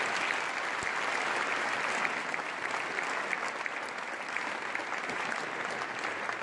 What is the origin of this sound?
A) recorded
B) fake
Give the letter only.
A